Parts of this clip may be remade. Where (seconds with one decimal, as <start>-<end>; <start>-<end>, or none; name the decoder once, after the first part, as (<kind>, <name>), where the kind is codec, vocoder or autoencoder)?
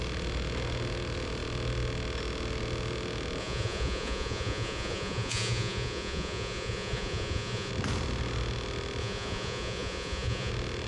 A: 3.4-7.7 (vocoder, Vocos); 9.0-10.5